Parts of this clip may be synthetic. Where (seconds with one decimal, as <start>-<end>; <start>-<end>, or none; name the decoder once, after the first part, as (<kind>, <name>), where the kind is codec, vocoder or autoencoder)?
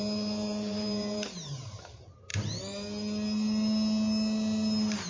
0.0-2.3 (vocoder, BigVGAN v2)